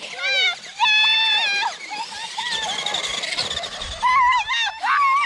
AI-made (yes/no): no